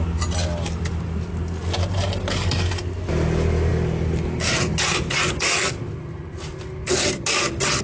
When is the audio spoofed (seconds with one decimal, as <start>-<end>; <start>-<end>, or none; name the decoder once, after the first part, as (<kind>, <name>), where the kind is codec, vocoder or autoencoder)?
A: none